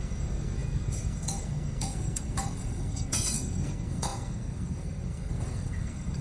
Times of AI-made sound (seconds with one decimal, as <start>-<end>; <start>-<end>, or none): 0.0-6.2